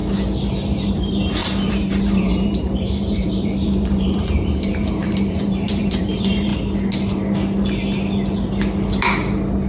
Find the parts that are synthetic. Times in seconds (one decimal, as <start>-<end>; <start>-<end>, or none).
0.5-6.5